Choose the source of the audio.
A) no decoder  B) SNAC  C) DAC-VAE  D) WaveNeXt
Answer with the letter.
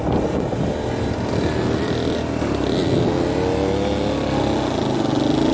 A